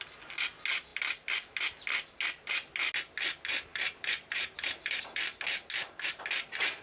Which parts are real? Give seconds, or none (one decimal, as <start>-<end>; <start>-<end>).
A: 0.0-3.7; 5.2-6.8

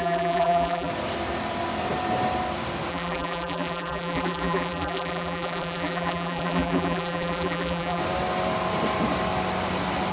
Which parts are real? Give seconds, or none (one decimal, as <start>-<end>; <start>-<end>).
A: 0.9-2.9; 8.0-10.1

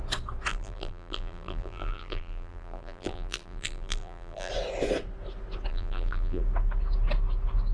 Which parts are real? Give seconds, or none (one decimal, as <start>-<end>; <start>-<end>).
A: 0.0-0.5; 4.5-5.7; 6.4-7.7

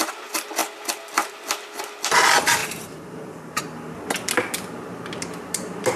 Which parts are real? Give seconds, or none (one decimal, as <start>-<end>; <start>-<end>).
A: 0.0-2.6; 3.6-6.0

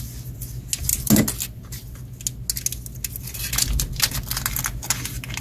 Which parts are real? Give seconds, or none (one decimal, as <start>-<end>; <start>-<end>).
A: 0.0-5.4

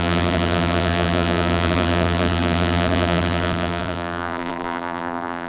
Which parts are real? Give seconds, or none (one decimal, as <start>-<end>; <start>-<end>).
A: none